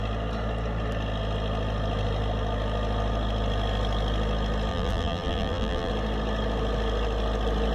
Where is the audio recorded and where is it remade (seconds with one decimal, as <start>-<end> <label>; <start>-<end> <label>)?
0.0-4.7 recorded; 4.7-5.9 remade; 5.9-7.7 recorded